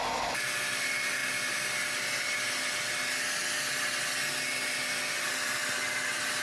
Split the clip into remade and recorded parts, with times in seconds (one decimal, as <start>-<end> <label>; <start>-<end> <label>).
0.0-6.4 recorded